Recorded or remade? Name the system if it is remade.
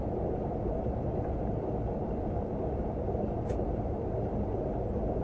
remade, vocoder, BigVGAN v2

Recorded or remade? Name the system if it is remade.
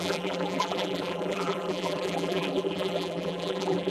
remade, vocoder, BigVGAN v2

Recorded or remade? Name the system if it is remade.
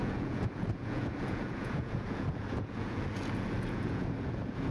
remade, vocoder, Vocos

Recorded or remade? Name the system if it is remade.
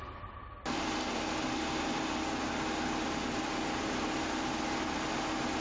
recorded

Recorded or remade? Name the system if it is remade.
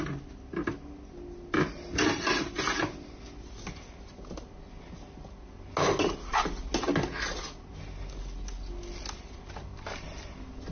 recorded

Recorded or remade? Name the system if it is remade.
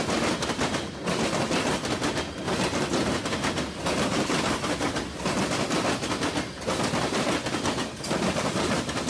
recorded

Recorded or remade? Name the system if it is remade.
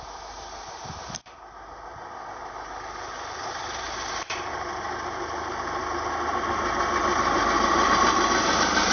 recorded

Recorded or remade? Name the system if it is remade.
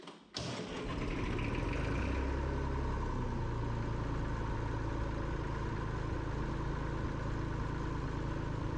recorded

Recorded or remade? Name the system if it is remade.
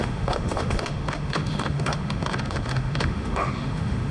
remade, autoencoder, DAC-VAE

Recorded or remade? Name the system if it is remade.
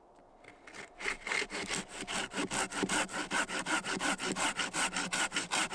recorded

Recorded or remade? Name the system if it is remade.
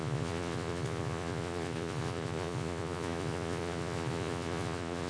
remade, vocoder, Vocos